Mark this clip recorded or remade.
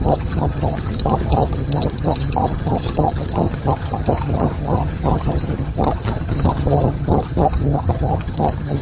remade